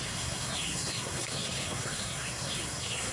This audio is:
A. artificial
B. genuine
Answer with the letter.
A